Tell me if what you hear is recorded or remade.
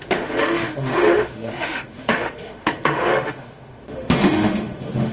remade